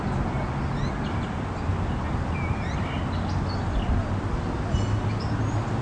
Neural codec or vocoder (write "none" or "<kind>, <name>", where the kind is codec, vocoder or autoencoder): none